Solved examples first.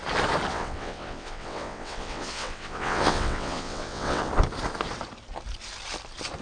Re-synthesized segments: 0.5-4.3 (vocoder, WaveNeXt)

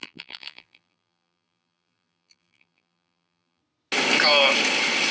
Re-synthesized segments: 0.0-3.6 (vocoder, BigVGAN v2)

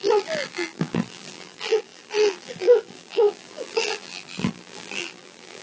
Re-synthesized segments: 0.0-5.6 (vocoder, BigVGAN v2)

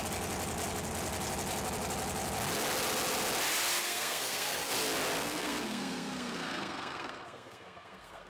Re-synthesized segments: 3.8-4.7 (codec, SNAC); 5.2-8.3

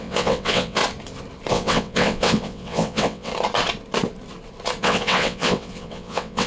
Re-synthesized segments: 0.0-0.8 (vocoder, WaveNeXt); 1.5-3.3; 4.8-6.5

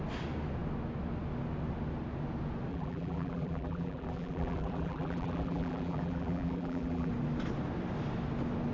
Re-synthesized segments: 2.7-7.1 (vocoder, BigVGAN v2)

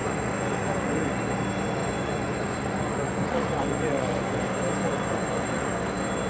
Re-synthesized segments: 0.0-1.2 (vocoder, Vocos); 1.8-4.3; 4.8-5.8

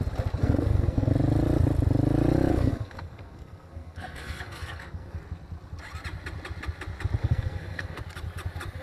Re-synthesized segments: 0.4-1.1 (codec, SNAC); 2.5-5.2; 7.2-8.0